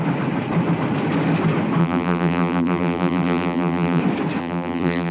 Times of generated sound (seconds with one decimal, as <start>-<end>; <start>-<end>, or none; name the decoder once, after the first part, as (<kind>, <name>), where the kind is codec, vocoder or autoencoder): 1.8-4.0 (vocoder, BigVGAN v2); 4.4-5.1